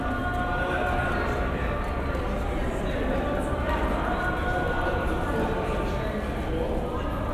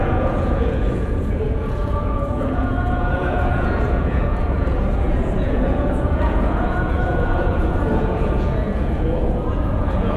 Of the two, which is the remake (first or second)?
second